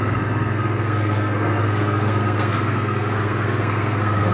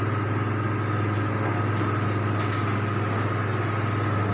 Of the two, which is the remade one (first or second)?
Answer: first